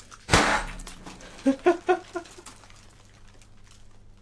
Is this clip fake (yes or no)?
no